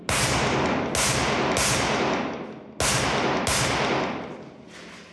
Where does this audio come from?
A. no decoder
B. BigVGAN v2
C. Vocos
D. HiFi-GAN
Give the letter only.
A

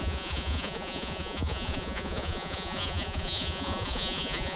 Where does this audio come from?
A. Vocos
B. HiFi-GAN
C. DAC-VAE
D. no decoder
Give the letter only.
A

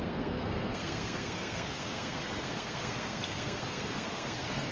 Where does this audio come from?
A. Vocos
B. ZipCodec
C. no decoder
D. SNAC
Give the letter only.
D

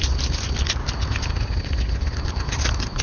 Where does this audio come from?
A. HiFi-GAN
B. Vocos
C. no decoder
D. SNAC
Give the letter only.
C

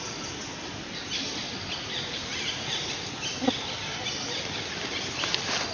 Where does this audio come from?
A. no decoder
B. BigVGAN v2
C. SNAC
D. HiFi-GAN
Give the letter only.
A